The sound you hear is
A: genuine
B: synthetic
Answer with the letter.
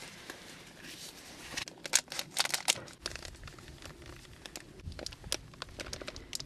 A